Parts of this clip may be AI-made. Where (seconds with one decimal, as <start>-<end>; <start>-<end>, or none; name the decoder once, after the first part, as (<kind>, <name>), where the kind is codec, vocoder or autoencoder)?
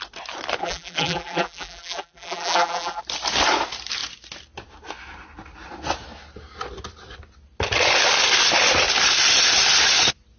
0.6-3.0 (vocoder, BigVGAN v2)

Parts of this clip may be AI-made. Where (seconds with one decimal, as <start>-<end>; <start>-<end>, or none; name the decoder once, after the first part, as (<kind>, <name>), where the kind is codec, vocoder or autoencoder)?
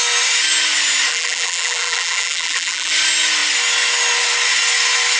1.1-2.9 (vocoder, BigVGAN v2)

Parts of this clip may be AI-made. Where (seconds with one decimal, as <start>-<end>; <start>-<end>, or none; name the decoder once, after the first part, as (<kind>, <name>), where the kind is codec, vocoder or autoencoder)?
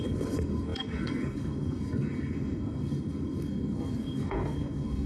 0.0-5.1 (codec, SNAC)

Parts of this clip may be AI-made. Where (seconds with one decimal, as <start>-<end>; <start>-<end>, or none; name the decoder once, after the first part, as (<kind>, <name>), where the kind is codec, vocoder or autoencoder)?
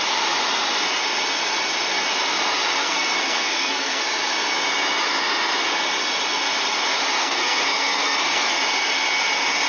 2.8-4.0 (codec, SNAC); 7.2-8.5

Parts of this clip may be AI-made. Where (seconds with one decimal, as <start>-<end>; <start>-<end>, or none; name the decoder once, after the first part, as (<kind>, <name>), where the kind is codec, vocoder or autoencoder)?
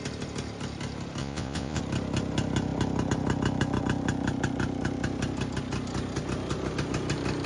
1.2-1.8 (vocoder, Vocos)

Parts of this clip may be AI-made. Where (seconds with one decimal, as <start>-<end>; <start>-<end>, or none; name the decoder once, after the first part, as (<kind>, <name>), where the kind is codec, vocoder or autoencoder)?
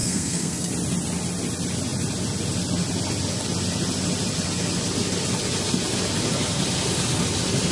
0.0-0.7 (codec, SNAC)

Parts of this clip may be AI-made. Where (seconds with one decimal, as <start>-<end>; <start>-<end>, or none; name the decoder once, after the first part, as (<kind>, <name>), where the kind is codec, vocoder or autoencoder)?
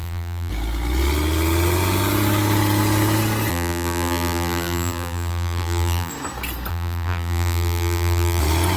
0.0-0.5 (vocoder, BigVGAN v2); 3.5-6.1; 6.7-8.4